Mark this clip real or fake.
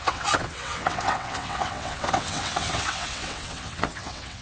fake